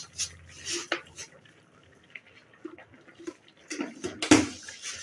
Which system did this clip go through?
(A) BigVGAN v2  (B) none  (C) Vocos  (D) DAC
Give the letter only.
B